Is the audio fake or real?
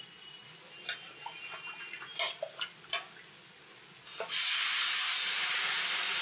real